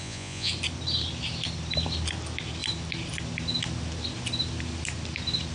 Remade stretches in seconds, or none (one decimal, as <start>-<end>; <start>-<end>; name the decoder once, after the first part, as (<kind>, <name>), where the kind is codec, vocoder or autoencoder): 0.0-0.5 (vocoder, Vocos)